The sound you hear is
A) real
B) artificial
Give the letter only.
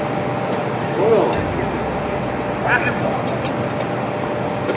A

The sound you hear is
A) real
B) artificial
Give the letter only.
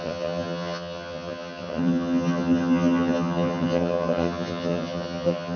B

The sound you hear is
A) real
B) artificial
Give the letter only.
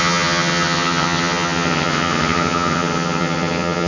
B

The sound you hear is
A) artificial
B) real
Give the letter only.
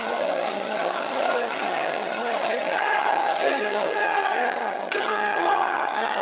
A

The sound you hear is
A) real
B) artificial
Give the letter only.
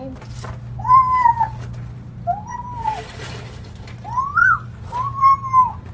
A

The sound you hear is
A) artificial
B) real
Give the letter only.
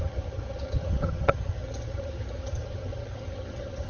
A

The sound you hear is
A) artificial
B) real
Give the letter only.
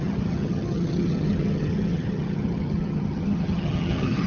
A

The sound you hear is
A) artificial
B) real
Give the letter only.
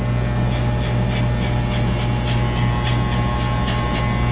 B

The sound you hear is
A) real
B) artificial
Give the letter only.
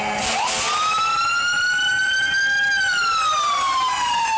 A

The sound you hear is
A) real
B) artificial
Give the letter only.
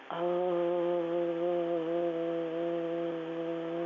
A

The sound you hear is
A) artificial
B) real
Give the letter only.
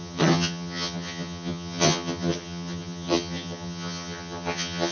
A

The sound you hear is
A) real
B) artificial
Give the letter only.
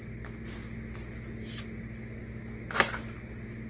A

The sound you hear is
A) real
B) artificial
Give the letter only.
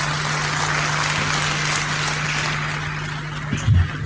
A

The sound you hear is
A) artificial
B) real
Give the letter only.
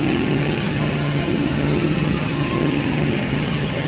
A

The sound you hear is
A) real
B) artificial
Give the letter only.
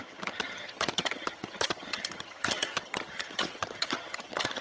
B